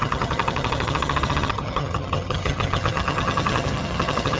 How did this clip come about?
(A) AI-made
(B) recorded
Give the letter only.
A